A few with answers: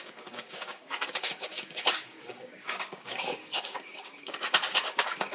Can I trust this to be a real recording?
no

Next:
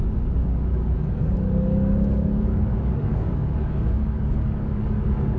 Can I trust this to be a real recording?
no